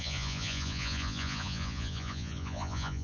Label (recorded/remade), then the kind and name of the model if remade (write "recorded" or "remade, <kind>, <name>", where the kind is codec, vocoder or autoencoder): remade, vocoder, Vocos